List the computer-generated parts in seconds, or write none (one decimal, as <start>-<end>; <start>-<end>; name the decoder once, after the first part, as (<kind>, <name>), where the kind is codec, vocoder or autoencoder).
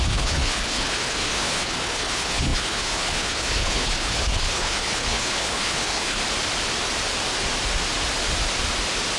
0.0-6.2 (codec, HILCodec)